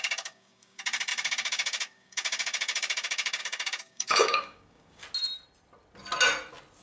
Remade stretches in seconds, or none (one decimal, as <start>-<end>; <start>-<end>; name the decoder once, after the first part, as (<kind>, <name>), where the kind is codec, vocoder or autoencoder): 0.0-5.0 (codec, DAC)